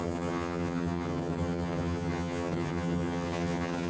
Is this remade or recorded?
remade